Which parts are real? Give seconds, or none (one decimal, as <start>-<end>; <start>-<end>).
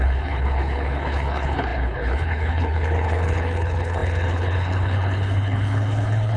none